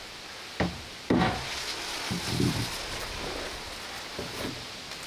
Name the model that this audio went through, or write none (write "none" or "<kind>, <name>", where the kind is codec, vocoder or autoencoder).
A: none